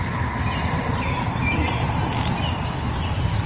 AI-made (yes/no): no